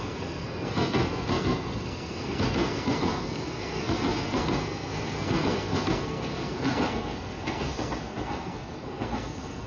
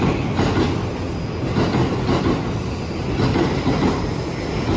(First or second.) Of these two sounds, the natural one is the second